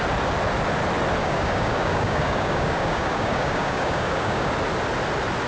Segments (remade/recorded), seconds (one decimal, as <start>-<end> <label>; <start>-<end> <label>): 0.0-1.2 recorded; 1.2-4.5 remade; 4.5-5.5 recorded